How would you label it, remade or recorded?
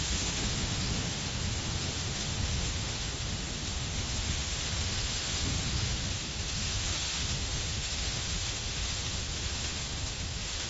remade